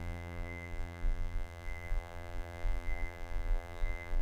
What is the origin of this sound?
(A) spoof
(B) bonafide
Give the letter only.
A